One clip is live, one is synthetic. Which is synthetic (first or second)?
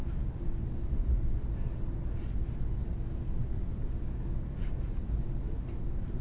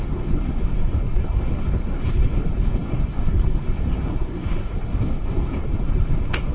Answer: second